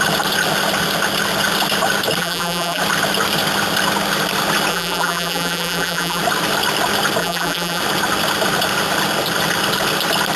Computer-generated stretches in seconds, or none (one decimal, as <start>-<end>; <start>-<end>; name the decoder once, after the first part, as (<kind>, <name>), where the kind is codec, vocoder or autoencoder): 2.2-2.8 (vocoder, BigVGAN v2); 4.7-6.2; 7.2-7.8